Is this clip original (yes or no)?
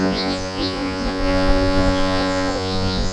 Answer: no